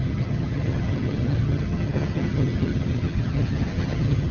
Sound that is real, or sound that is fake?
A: fake